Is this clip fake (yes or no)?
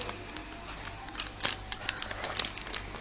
no